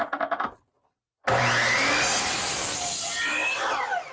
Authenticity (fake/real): real